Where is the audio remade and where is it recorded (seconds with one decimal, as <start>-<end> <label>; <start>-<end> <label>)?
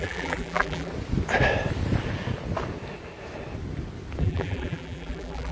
0.0-0.9 remade; 0.9-4.2 recorded; 4.2-5.5 remade